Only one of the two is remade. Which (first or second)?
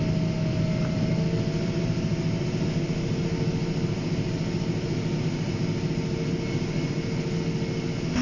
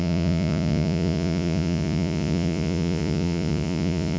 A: second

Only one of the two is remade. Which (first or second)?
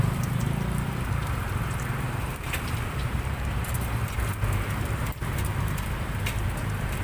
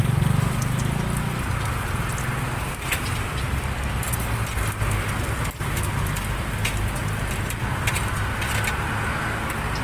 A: first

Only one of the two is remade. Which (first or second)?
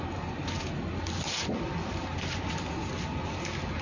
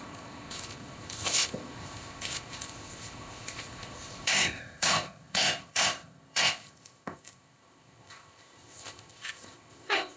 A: second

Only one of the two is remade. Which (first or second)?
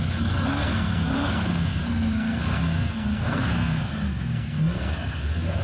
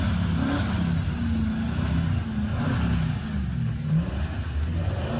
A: first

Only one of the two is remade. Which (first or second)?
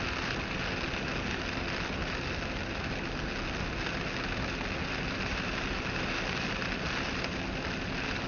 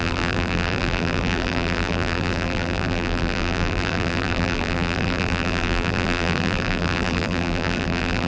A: second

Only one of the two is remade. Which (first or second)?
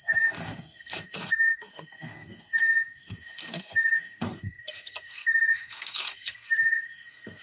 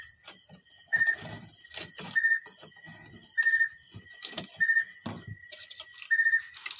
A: first